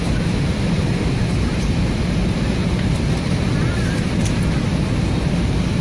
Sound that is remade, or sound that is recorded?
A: remade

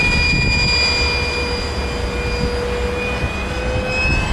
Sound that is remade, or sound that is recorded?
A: recorded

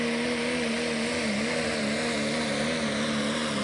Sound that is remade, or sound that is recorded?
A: recorded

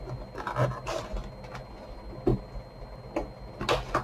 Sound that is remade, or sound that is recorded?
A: recorded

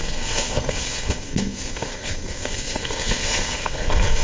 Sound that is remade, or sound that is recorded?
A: remade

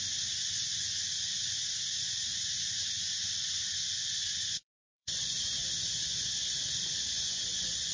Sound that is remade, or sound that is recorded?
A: remade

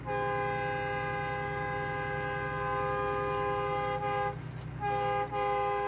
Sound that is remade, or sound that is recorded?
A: recorded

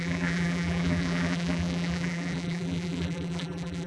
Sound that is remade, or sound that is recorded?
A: remade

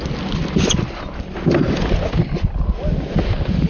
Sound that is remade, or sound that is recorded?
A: recorded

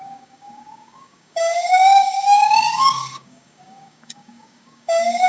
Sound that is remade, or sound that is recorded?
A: remade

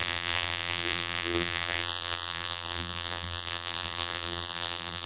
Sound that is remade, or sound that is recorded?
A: remade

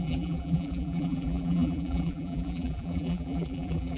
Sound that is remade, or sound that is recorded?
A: remade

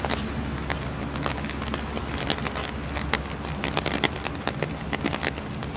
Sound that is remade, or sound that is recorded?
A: recorded